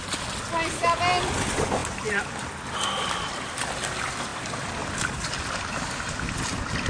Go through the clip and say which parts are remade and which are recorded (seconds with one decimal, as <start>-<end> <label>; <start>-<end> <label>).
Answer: 0.0-1.8 recorded; 1.8-2.5 remade; 2.5-6.9 recorded